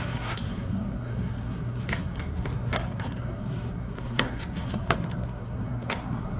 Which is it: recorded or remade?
remade